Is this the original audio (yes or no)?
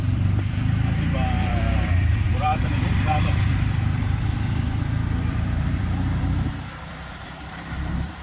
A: no